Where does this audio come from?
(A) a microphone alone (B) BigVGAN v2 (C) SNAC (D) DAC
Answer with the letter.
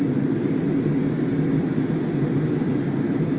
A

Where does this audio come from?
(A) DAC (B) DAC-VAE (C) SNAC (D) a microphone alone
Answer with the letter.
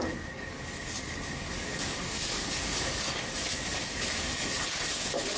A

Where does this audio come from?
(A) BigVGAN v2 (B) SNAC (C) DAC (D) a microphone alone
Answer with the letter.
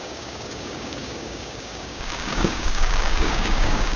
C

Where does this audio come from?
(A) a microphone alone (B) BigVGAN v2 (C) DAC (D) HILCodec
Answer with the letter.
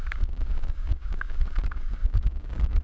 C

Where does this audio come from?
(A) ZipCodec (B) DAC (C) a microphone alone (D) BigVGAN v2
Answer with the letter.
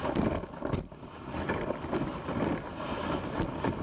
C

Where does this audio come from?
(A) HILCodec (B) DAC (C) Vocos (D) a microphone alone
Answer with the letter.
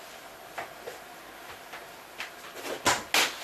D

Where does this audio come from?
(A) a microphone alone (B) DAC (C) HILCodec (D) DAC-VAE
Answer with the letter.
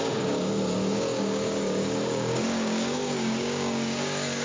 B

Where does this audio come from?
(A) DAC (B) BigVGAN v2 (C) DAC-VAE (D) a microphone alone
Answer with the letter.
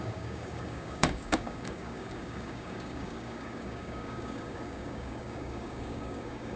A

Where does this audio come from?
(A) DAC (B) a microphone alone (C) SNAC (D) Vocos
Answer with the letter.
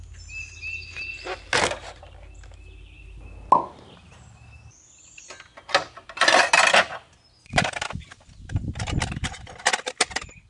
B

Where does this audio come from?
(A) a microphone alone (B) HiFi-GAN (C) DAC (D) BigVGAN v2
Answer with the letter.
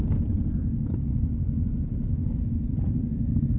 A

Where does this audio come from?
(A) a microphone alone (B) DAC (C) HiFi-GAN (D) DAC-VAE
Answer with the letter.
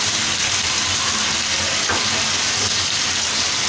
A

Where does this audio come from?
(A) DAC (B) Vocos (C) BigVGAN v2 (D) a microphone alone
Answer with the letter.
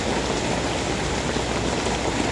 D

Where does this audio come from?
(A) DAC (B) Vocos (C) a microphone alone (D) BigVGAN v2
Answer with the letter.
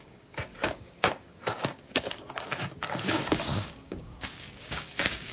A